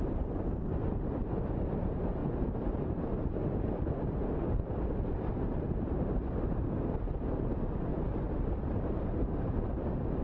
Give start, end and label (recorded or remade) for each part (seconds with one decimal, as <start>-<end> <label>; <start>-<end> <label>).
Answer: 0.0-2.2 recorded; 2.2-6.8 remade; 6.8-7.9 recorded; 7.9-10.2 remade